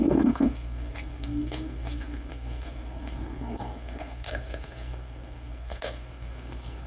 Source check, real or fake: fake